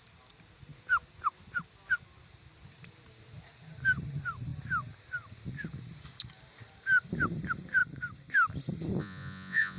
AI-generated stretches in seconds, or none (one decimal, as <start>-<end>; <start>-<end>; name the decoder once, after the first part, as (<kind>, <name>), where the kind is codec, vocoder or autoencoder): 9.0-9.8 (vocoder, Vocos)